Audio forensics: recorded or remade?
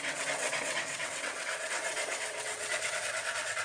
remade